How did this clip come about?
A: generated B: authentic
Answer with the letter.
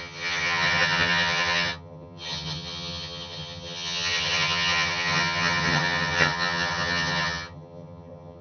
A